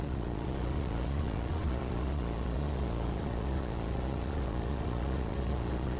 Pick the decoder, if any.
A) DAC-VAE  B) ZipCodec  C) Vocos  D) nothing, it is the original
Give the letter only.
C